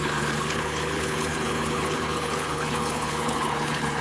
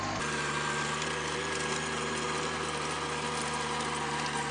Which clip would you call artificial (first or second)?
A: first